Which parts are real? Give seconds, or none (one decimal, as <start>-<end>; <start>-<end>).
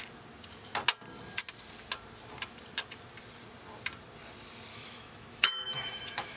0.0-4.7